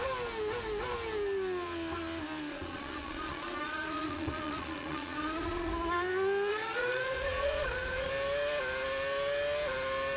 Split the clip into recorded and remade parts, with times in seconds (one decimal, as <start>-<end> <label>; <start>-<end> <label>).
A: 0.0-2.5 recorded; 2.5-5.7 remade; 5.7-6.5 recorded; 6.5-8.1 remade; 8.1-10.2 recorded